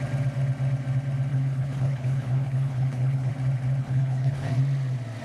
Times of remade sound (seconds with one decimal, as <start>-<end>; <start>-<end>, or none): 1.3-3.3; 3.8-4.6

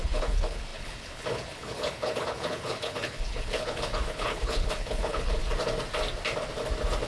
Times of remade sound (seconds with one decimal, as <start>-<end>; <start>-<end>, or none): 0.0-5.4

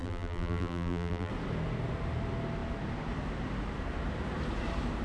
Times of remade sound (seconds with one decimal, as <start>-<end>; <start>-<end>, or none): 0.0-1.3

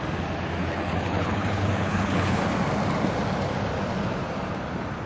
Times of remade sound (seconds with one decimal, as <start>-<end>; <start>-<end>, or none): 0.6-2.4